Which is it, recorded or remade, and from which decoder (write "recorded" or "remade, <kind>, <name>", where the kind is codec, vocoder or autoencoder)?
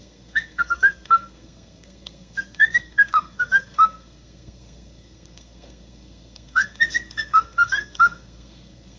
remade, codec, SNAC